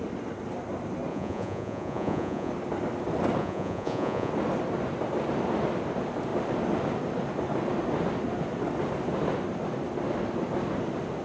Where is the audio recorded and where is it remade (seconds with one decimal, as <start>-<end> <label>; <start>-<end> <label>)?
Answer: 0.0-1.1 recorded; 1.1-2.5 remade; 2.5-3.4 recorded; 3.4-4.3 remade; 4.3-11.2 recorded